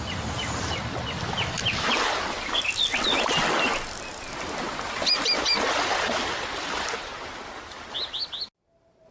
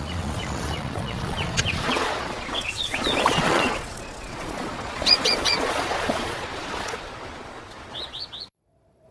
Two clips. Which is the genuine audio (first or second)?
first